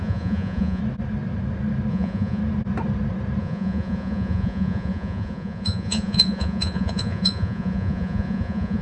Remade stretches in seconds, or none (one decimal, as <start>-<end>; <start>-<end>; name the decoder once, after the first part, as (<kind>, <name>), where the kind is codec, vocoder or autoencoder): 0.0-0.8 (vocoder, Vocos); 1.9-2.4; 3.4-8.8